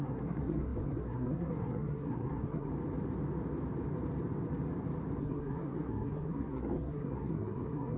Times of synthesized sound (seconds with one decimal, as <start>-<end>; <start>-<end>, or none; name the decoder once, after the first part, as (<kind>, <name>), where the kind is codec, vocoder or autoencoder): 0.0-2.7 (codec, SNAC); 5.2-8.0

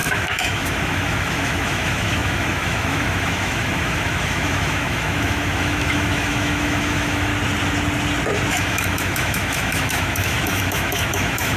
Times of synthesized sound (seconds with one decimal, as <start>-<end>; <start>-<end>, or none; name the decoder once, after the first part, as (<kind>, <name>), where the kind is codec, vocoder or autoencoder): 0.0-7.3 (autoencoder, DAC-VAE); 8.5-11.6